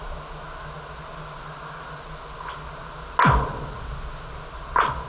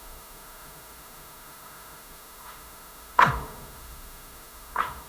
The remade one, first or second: second